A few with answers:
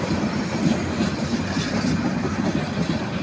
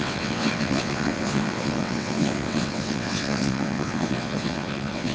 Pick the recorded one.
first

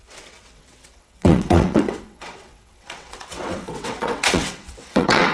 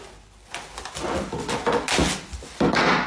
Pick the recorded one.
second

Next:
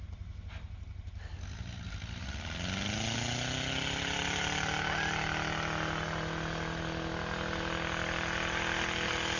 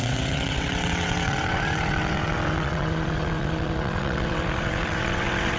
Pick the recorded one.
first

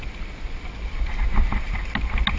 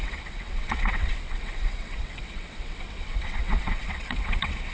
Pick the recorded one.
first